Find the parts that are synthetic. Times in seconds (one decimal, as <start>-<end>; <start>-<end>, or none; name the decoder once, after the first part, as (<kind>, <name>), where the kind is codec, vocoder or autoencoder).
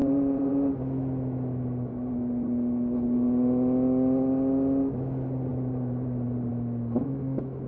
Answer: 0.0-0.7 (vocoder, BigVGAN v2); 5.5-6.5